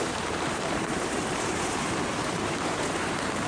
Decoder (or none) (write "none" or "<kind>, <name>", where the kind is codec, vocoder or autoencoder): vocoder, BigVGAN v2